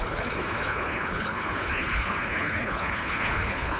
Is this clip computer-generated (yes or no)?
yes